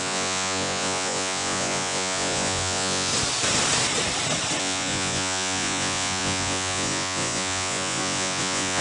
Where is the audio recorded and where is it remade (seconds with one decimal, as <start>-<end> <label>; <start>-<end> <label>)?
0.0-3.1 remade; 3.1-4.6 recorded; 4.6-8.8 remade